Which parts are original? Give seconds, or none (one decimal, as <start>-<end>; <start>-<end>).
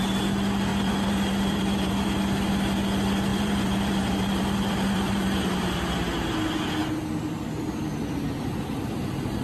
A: 0.0-0.7; 1.9-3.3; 5.5-9.4